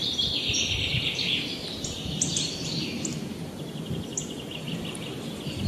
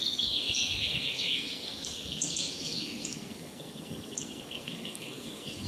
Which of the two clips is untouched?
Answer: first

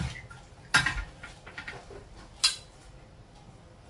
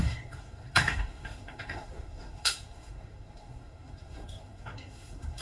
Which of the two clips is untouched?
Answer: first